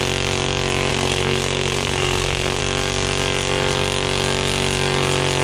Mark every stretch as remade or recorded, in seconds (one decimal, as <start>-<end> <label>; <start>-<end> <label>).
0.0-0.9 recorded; 0.9-2.6 remade; 2.6-5.4 recorded